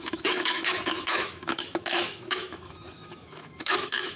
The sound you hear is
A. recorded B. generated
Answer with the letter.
B